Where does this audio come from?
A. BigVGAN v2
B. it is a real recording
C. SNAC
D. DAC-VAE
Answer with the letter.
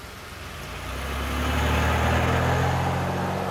B